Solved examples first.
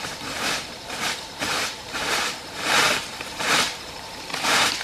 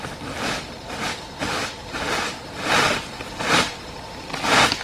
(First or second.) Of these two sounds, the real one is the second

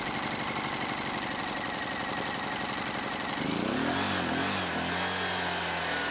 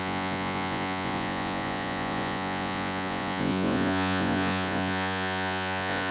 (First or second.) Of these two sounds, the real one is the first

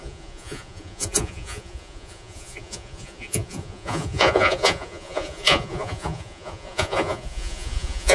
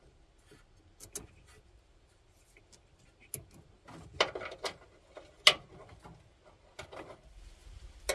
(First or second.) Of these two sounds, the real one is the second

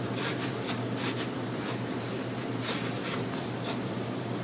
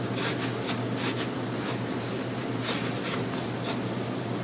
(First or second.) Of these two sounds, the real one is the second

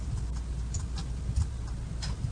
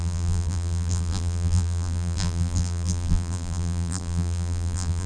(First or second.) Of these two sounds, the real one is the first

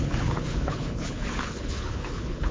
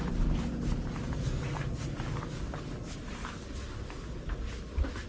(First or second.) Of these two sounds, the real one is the second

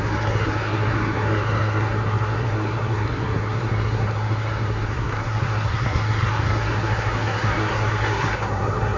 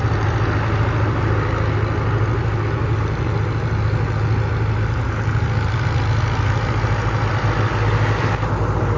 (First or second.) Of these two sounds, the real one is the second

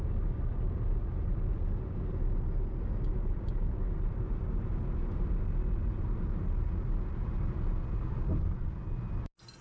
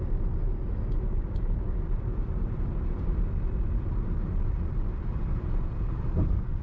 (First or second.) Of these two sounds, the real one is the first